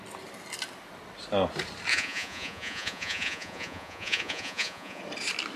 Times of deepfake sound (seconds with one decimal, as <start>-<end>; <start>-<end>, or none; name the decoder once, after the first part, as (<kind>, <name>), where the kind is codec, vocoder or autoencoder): 1.9-5.0 (vocoder, Vocos)